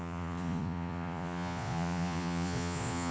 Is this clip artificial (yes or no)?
yes